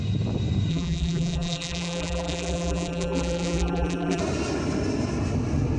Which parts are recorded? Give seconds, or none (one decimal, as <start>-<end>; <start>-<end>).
0.0-0.7; 4.2-5.8